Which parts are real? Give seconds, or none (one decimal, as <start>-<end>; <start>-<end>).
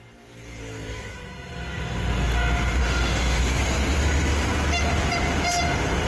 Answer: 0.0-2.8; 3.4-6.1